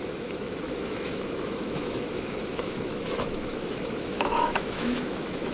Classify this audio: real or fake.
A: fake